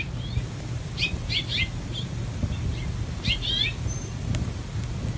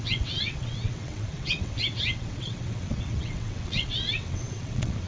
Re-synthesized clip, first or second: second